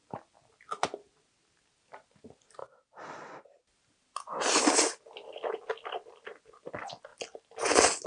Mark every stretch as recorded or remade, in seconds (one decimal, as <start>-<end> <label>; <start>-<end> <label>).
0.0-8.1 recorded